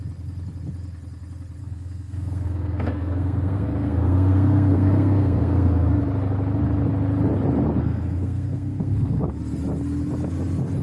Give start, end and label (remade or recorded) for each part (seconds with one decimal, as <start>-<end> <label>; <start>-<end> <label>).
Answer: 0.0-1.6 recorded; 1.6-6.0 remade; 6.0-7.8 recorded; 7.8-9.4 remade; 9.4-10.8 recorded